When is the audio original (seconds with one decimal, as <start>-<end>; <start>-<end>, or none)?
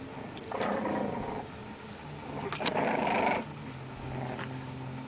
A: 0.0-5.1